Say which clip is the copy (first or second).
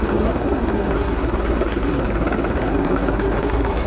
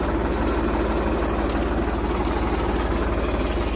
first